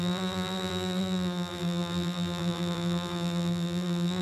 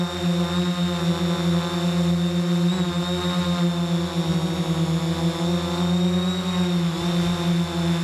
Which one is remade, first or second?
first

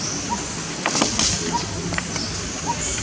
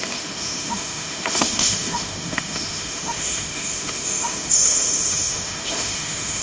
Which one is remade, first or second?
second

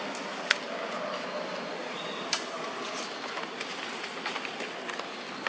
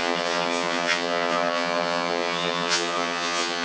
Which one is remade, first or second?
second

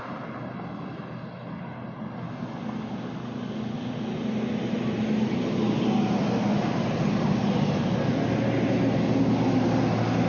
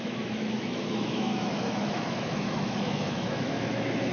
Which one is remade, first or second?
second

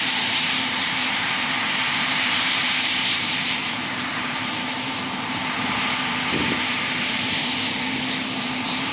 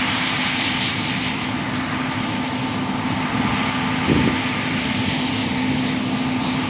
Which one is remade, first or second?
first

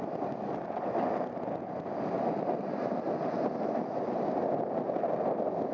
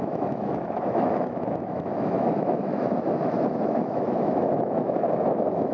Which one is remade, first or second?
second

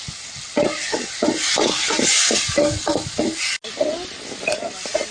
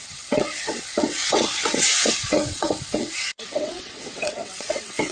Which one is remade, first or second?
second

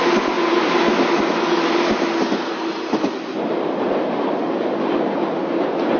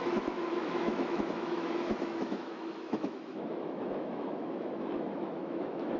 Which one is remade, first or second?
second